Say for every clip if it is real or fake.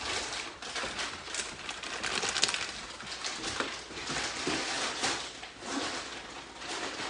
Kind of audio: real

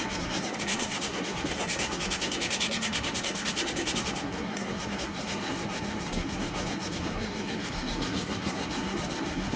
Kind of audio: fake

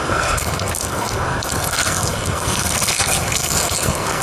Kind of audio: fake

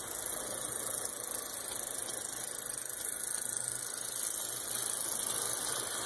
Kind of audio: real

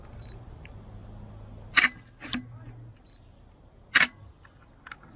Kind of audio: real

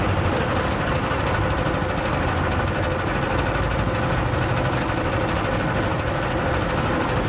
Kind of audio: real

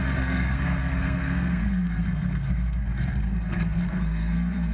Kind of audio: fake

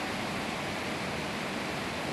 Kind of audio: real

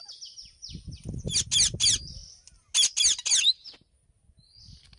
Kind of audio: real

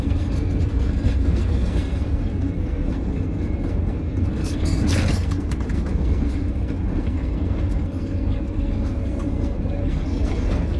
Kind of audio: fake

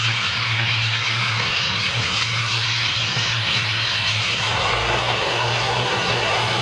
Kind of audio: fake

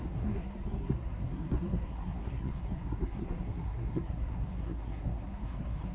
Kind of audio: fake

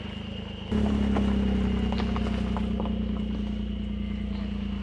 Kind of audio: real